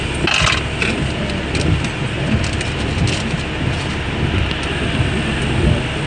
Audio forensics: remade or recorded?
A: recorded